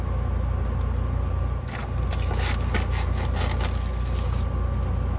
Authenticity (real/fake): real